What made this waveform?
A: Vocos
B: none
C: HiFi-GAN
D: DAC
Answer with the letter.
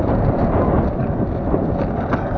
B